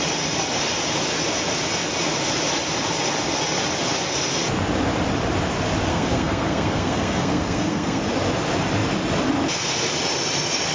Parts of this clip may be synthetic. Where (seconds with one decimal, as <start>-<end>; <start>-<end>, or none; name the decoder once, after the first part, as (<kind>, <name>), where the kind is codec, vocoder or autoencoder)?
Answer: 5.9-8.0 (codec, SNAC)